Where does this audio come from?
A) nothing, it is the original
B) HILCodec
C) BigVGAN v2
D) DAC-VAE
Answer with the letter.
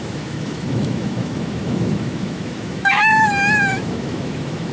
D